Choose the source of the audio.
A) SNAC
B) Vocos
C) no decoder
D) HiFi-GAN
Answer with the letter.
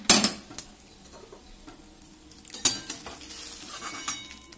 C